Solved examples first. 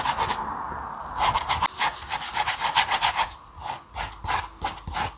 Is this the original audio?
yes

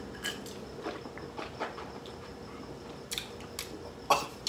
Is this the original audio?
yes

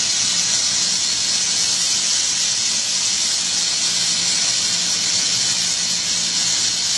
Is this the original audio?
yes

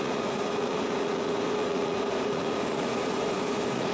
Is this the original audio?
no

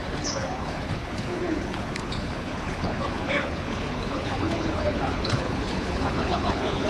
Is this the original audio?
no